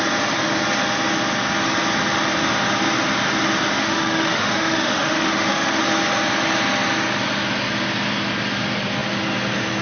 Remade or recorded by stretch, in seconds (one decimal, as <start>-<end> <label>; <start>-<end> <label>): 0.0-3.8 recorded; 3.8-5.8 remade; 5.8-9.8 recorded